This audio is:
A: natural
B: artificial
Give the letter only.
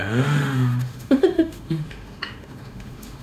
B